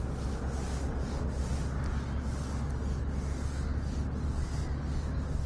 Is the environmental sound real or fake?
real